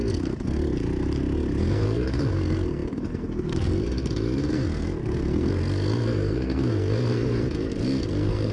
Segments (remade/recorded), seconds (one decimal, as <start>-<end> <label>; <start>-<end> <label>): 0.0-0.6 remade; 0.6-1.6 recorded; 1.6-8.5 remade